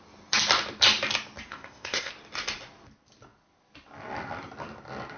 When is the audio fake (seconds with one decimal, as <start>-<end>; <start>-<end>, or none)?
1.5-2.1